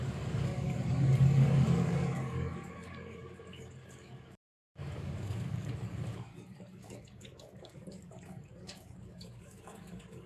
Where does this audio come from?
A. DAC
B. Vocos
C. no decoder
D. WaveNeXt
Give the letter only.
A